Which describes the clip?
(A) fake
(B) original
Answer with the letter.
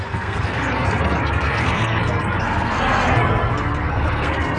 A